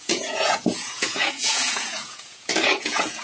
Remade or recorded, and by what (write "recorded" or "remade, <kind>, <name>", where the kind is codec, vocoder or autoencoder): remade, vocoder, Vocos